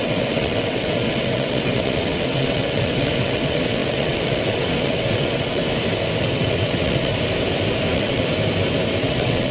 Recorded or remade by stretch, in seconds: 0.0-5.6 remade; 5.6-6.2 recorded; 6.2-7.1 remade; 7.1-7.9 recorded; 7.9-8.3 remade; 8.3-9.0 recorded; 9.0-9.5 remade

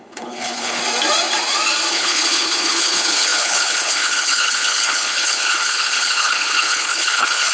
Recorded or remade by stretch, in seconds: 0.0-0.8 remade; 0.8-1.9 recorded; 1.9-7.5 remade

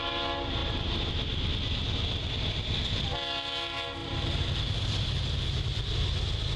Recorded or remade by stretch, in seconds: 0.0-0.6 recorded; 0.6-1.1 remade; 1.1-4.0 recorded; 4.0-4.6 remade; 4.6-6.6 recorded